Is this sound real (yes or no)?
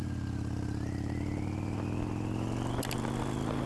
yes